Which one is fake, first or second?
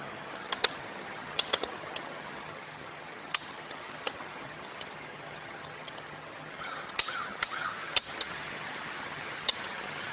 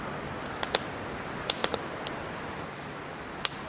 first